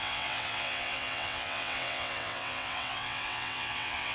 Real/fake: fake